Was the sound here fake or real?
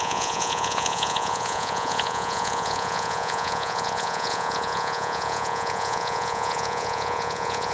fake